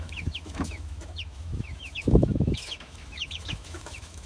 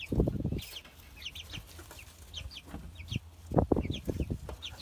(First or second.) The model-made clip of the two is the first